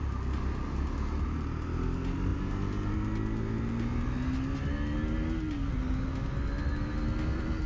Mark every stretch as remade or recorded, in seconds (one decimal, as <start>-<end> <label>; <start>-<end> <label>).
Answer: 0.0-7.7 recorded